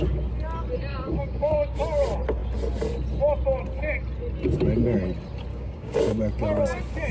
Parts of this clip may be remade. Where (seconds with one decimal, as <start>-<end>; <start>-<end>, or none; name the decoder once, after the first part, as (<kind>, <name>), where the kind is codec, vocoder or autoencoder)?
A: 0.9-1.8 (codec, DAC); 5.5-6.2